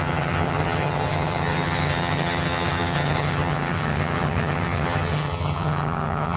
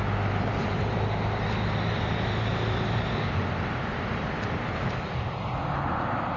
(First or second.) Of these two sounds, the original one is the second